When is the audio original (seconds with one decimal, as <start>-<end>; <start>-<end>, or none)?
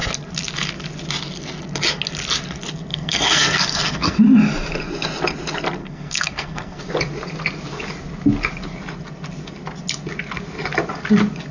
0.0-2.9; 4.2-5.8; 6.8-11.5